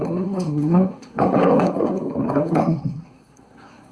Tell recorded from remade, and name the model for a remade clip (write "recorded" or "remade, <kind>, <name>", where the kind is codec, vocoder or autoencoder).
remade, codec, SNAC